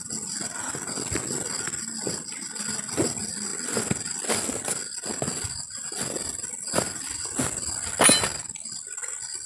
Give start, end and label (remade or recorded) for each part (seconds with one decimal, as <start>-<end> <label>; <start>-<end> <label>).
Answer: 0.0-9.5 recorded